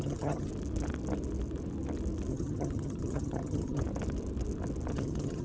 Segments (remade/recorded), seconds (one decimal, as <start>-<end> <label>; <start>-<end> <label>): 0.0-0.5 remade; 0.5-2.3 recorded; 2.3-3.8 remade; 3.8-4.9 recorded; 4.9-5.4 remade